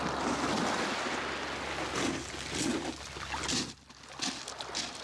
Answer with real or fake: real